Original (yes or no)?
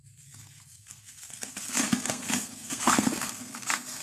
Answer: no